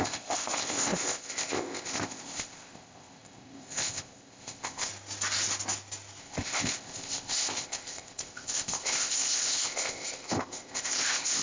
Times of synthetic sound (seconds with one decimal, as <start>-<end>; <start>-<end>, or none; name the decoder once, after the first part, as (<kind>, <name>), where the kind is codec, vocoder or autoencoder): 0.0-4.9 (codec, ZipCodec); 6.2-11.4